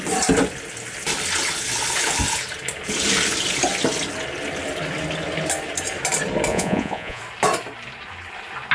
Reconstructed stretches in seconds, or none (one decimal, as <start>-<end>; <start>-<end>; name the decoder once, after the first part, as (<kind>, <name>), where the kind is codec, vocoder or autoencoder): 6.5-7.2 (vocoder, Vocos)